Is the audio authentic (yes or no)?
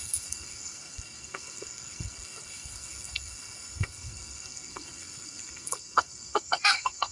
no